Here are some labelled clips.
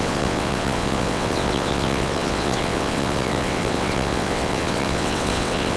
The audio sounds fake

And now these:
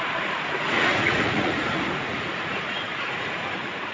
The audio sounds fake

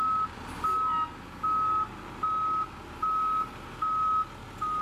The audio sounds real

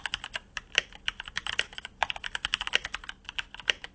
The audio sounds fake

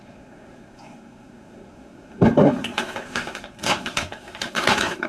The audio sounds fake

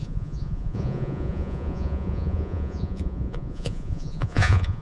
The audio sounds fake